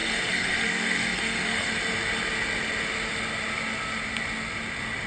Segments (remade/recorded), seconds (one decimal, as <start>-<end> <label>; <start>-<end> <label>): 0.0-1.7 remade; 1.7-5.1 recorded